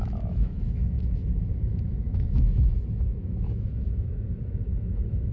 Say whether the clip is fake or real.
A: fake